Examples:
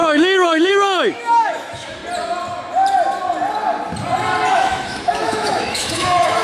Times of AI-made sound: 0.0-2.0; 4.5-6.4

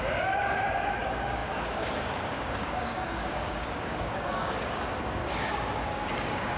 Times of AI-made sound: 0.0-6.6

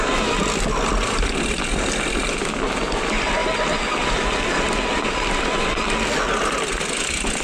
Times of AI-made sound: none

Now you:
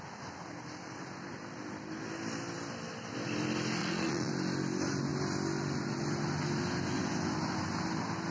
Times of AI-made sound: 3.8-4.3

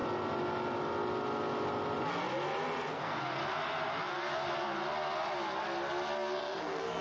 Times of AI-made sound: 2.9-3.4; 6.4-7.0

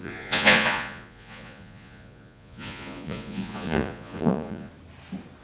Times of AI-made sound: 0.0-4.7

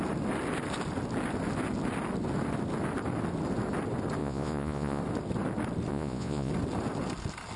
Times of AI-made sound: 4.2-5.0; 5.9-6.5